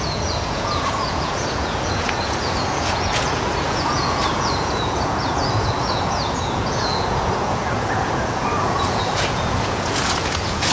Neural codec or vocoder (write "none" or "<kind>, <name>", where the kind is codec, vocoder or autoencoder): vocoder, Vocos